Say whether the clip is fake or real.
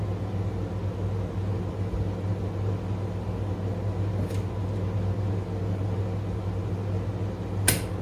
real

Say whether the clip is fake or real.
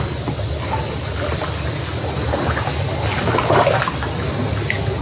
real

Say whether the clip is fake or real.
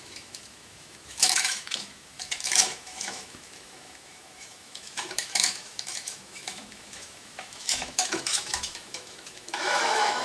fake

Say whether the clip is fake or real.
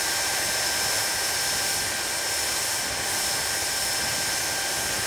real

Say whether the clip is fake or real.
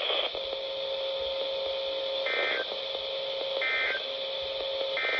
real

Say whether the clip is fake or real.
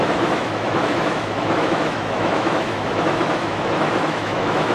fake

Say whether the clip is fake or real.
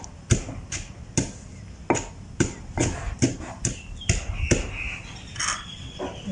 real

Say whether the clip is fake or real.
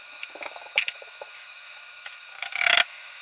fake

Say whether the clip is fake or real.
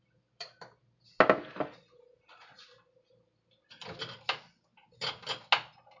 real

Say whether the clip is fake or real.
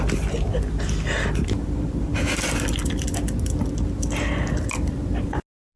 real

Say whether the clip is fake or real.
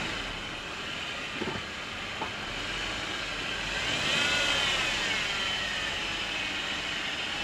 real